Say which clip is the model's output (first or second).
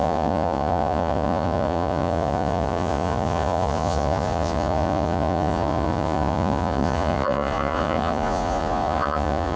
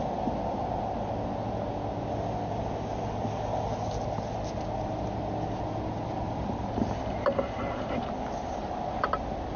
first